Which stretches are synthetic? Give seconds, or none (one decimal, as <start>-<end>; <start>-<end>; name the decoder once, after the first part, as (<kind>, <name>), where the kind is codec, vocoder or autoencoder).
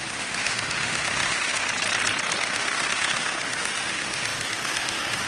0.0-1.7 (autoencoder, DAC-VAE); 2.4-5.3